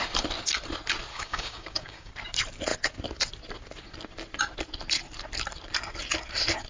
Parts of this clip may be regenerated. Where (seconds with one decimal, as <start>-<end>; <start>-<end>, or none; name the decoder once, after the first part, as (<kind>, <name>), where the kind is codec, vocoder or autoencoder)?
1.1-2.1 (codec, DAC)